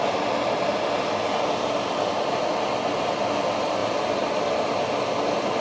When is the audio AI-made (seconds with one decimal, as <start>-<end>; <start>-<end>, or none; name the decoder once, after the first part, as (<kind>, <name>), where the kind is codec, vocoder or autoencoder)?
none

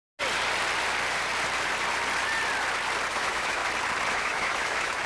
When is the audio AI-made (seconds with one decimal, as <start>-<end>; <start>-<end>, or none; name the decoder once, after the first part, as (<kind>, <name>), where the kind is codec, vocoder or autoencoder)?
3.1-3.6 (autoencoder, DAC-VAE); 4.1-5.1

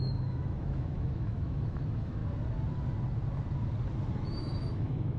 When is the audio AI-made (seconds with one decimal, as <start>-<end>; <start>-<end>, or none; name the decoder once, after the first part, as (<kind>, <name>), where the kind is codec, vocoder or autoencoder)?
0.0-2.2 (autoencoder, DAC-VAE); 4.1-5.2

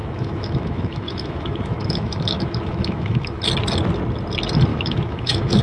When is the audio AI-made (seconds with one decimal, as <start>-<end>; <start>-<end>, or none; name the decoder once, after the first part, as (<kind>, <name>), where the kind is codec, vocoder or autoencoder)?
0.0-3.4 (autoencoder, DAC-VAE); 4.7-5.6

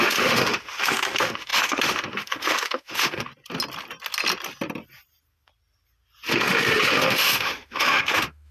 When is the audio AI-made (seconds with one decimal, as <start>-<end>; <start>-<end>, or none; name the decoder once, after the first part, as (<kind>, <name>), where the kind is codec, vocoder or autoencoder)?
0.0-3.3 (autoencoder, DAC-VAE); 6.3-8.5

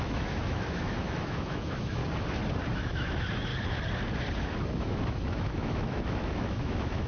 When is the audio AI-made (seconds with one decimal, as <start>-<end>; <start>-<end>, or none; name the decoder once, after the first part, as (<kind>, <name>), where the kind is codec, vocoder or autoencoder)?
0.0-2.0 (autoencoder, DAC-VAE); 2.7-3.5; 4.4-7.1

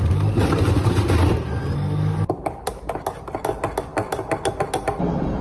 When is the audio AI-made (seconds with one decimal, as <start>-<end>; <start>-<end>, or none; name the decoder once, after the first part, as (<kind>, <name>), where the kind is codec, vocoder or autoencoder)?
none

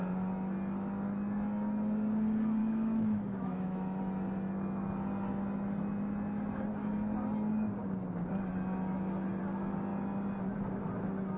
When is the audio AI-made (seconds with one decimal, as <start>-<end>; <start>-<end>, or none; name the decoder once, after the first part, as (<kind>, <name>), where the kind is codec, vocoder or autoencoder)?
2.6-4.0 (autoencoder, DAC-VAE)